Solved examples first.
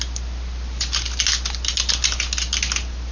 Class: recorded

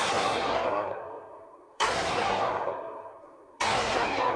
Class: remade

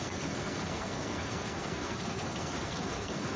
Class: remade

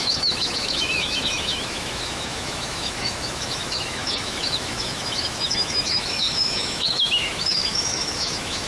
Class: remade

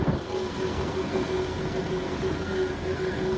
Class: remade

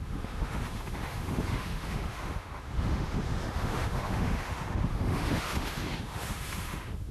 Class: remade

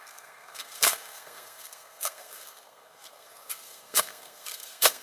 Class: remade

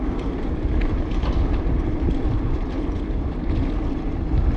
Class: recorded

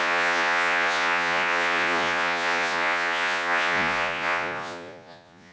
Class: remade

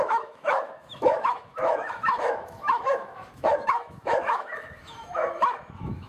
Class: remade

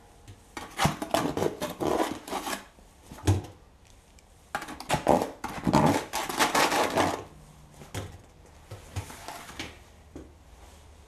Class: recorded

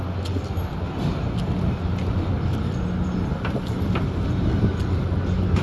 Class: recorded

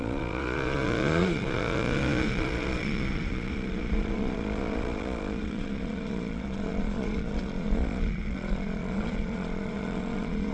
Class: remade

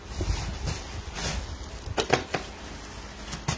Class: recorded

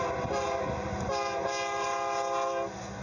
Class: recorded